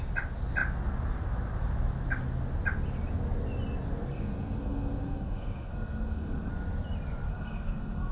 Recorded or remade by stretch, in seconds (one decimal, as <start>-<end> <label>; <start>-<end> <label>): 0.0-4.1 recorded; 4.1-6.5 remade; 6.5-7.3 recorded; 7.3-8.1 remade